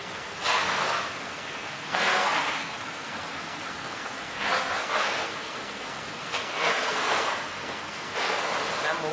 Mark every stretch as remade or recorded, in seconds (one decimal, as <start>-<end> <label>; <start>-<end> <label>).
0.0-8.5 remade; 8.5-9.1 recorded